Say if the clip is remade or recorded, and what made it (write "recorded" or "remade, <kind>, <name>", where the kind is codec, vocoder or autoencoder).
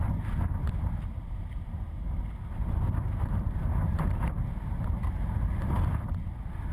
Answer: recorded